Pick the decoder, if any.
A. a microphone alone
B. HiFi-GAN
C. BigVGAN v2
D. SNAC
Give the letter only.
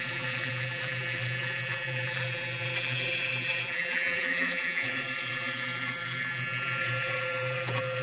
C